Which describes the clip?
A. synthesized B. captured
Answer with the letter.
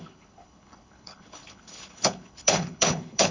A